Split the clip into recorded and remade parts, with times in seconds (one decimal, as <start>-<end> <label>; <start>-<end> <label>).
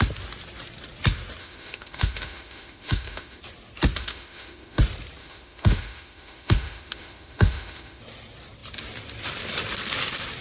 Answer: 0.0-1.4 recorded; 1.4-3.4 remade; 3.4-4.0 recorded; 4.0-4.8 remade; 4.8-5.2 recorded; 5.2-8.0 remade; 8.0-10.4 recorded